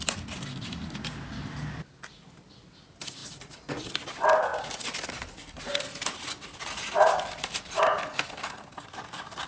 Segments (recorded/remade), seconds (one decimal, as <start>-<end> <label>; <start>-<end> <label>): 0.0-9.5 recorded